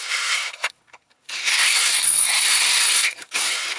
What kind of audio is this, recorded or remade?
remade